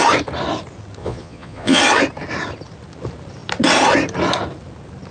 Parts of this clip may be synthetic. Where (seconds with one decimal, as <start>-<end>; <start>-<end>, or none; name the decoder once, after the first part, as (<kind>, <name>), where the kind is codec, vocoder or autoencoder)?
1.0-1.8 (vocoder, Vocos)